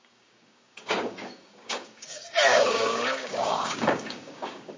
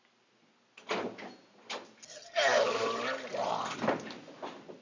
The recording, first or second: second